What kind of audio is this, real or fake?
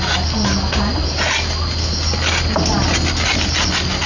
real